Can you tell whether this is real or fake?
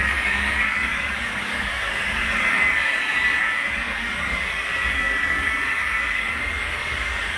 fake